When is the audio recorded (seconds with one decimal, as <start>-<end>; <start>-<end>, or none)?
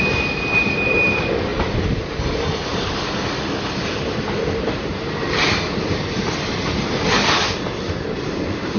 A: 0.0-8.8